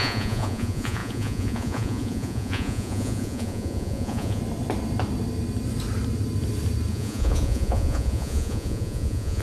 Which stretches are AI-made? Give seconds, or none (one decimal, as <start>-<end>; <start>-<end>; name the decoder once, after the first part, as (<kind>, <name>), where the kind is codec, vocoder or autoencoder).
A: 0.0-4.4 (vocoder, Vocos); 6.9-9.4